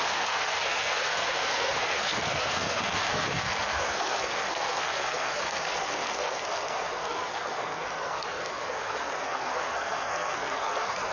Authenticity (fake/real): fake